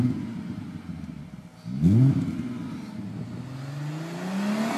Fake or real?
real